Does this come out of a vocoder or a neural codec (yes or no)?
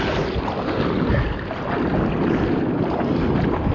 no